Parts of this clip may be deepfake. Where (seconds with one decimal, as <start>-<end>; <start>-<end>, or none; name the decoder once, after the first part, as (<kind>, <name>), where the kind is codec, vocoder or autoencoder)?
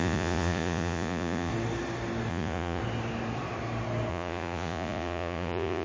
0.0-1.5 (vocoder, Vocos); 2.3-2.8; 4.1-5.8